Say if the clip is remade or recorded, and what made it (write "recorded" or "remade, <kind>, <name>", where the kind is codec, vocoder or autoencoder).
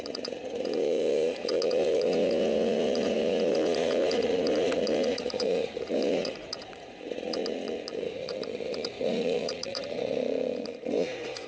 remade, vocoder, Vocos